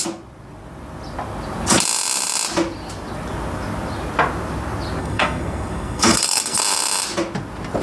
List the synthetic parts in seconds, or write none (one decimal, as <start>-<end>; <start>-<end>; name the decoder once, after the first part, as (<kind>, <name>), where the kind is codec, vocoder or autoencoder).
5.0-6.6 (codec, SNAC)